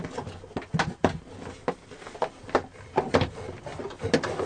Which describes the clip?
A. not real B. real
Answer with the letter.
B